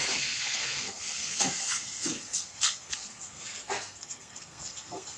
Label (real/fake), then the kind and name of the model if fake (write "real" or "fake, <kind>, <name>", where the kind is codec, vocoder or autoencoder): fake, codec, SNAC